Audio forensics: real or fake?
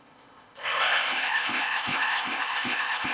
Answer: fake